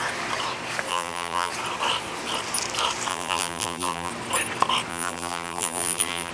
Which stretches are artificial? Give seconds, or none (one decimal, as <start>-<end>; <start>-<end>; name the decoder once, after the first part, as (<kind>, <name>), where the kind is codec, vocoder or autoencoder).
0.9-1.5 (vocoder, BigVGAN v2); 3.1-4.1; 4.9-6.3